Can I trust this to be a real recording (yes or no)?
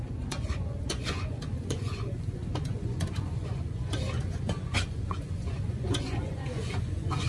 no